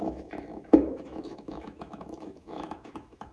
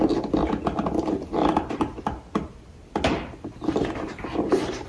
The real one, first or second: second